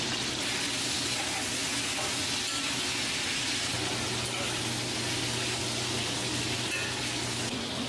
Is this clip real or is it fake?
real